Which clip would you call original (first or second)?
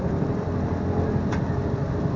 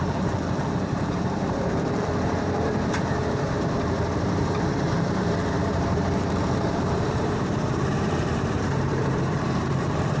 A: first